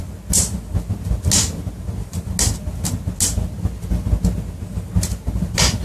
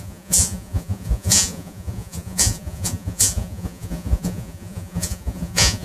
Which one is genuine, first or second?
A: first